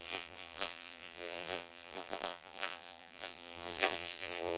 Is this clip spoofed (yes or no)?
yes